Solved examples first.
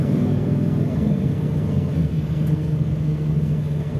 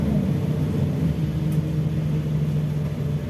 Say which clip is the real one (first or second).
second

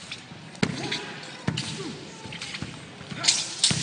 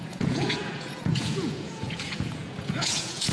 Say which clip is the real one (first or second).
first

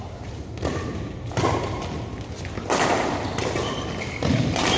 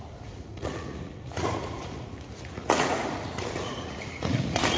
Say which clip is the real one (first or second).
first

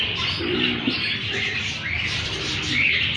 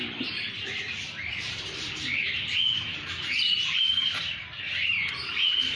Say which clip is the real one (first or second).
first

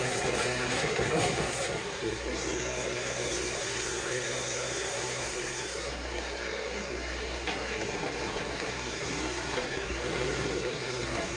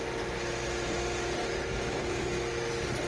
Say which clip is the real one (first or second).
second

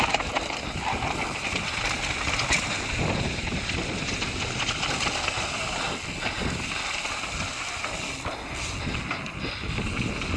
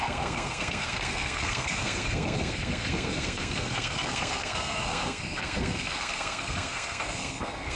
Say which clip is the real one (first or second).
first